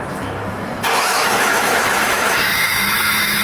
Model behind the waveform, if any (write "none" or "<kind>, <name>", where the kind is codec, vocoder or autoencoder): autoencoder, DAC-VAE